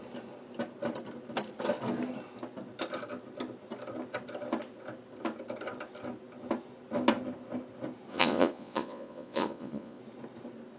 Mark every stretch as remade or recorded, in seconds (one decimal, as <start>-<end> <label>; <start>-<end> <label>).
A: 0.0-8.1 recorded; 8.1-10.0 remade; 10.0-10.8 recorded